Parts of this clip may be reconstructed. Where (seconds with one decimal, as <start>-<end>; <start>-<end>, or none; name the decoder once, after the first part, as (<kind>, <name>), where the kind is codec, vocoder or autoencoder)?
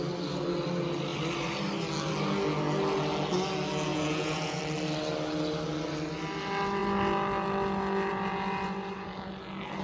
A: 3.9-4.6 (vocoder, Vocos)